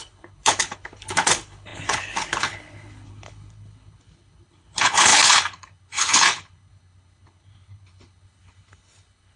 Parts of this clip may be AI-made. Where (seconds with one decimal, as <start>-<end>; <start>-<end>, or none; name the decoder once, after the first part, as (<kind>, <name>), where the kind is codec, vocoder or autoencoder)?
0.0-9.4 (codec, HILCodec)